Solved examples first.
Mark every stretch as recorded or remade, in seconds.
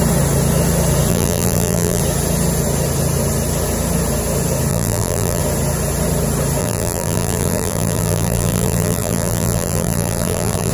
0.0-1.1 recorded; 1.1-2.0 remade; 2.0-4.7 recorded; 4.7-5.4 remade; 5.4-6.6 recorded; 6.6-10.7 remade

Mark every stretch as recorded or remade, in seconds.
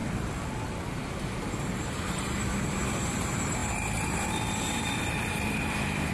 0.0-1.5 recorded; 1.5-6.1 remade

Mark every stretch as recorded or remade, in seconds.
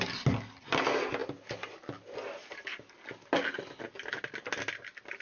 0.0-5.2 recorded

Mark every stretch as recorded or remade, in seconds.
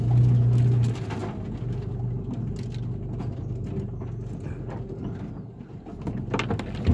0.0-6.9 recorded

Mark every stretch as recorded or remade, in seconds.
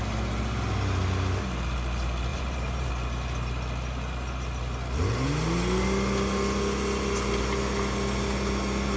0.0-2.3 recorded; 2.3-2.9 remade; 2.9-9.0 recorded